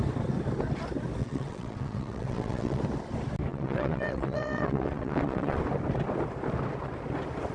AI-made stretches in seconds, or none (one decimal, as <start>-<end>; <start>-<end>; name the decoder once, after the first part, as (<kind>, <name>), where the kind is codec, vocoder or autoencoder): 1.2-2.8 (vocoder, WaveNeXt); 3.5-5.6